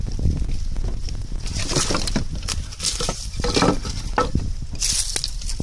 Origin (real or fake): real